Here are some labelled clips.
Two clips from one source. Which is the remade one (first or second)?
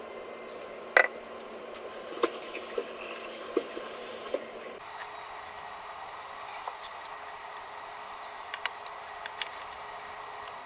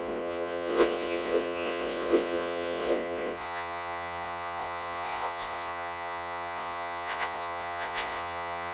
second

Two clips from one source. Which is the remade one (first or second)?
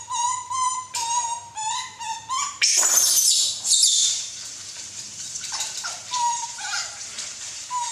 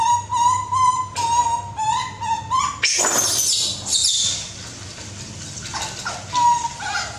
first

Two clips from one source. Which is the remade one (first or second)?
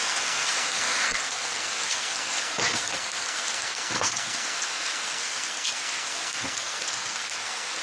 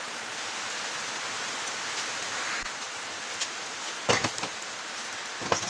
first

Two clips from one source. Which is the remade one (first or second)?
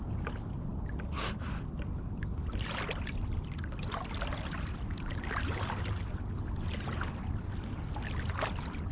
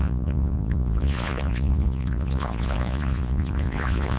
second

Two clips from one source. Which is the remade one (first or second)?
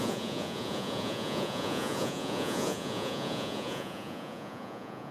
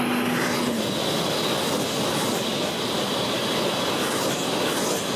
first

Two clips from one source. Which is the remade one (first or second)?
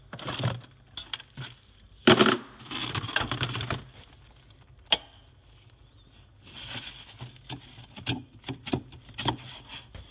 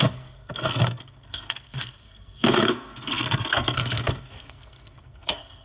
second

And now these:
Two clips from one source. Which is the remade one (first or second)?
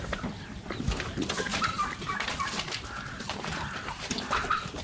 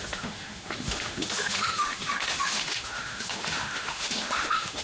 second